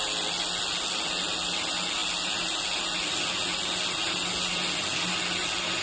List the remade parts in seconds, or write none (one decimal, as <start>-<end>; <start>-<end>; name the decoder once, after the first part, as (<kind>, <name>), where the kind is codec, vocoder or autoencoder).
none

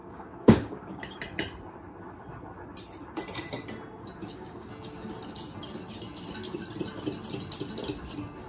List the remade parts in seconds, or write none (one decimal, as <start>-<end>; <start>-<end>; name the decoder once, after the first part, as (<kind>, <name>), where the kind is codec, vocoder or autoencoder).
0.0-1.2 (codec, DAC); 4.2-4.7